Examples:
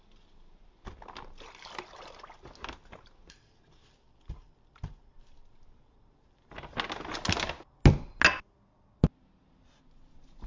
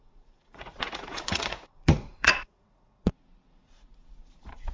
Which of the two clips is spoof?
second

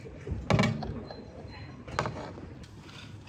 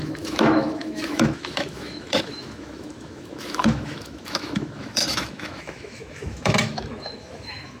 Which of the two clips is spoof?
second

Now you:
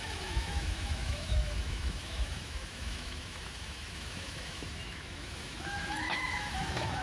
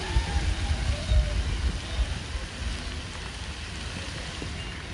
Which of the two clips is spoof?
first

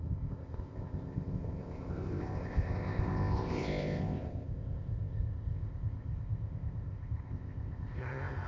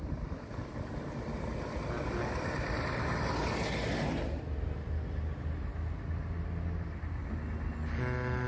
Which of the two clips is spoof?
first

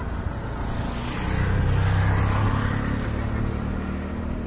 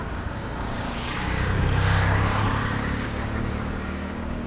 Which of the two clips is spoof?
second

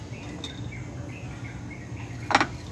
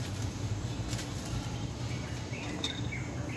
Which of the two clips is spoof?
second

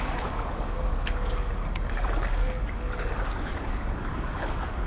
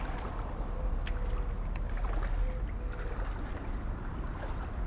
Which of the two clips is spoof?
first